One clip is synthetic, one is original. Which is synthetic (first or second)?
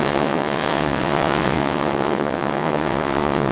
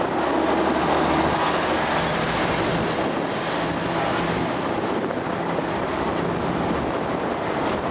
first